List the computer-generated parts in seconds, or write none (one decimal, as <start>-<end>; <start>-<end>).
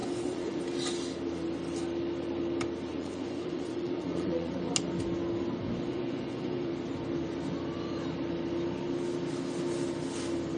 0.0-0.6; 2.9-4.5; 5.9-6.7